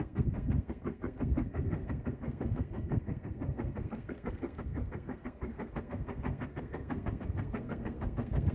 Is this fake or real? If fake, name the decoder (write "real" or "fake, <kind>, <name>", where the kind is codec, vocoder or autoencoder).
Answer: fake, codec, SNAC